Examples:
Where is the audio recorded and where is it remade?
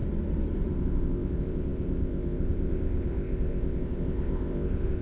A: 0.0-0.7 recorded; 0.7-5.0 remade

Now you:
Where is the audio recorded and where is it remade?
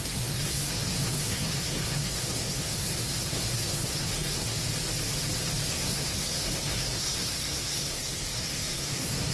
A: 0.0-4.6 remade; 4.6-5.7 recorded; 5.7-9.3 remade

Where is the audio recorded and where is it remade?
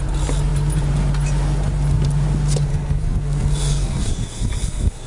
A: 0.0-2.7 recorded; 2.7-5.1 remade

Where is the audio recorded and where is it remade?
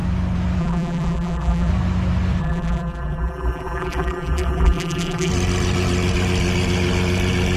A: 0.0-0.6 recorded; 0.6-1.7 remade; 1.7-2.4 recorded; 2.4-5.3 remade; 5.3-7.6 recorded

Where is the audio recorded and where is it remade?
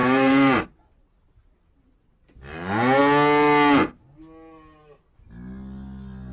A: 0.0-0.6 remade; 0.6-6.3 recorded